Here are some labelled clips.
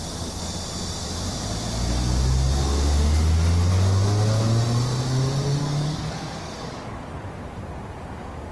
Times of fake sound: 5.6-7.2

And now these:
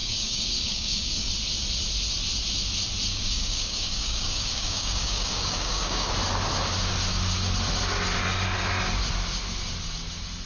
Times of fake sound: 0.0-1.3; 3.1-6.1

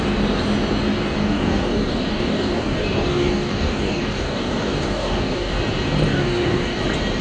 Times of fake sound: 1.2-5.5; 6.1-6.8

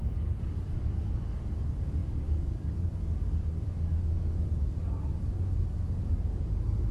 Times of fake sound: 0.0-6.9